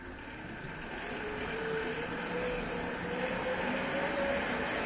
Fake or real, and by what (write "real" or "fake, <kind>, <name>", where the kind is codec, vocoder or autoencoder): real